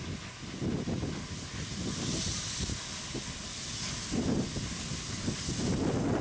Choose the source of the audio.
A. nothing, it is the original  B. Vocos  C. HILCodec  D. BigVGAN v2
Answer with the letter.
A